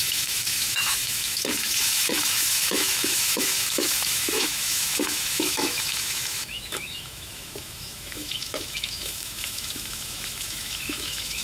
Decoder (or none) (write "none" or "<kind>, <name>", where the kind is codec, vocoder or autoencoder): autoencoder, DAC-VAE